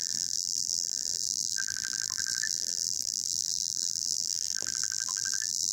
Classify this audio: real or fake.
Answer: fake